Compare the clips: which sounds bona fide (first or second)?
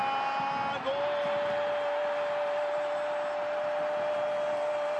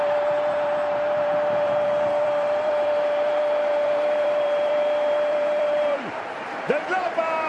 first